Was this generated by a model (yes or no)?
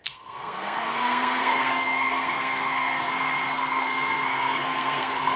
yes